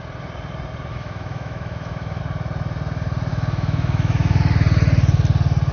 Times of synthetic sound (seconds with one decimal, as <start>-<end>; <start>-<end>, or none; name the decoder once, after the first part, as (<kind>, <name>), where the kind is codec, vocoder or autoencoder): 0.9-2.2 (autoencoder, DAC-VAE); 3.3-4.4